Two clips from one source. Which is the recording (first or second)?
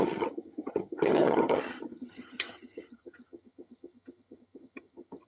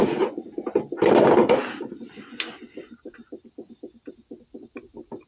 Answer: second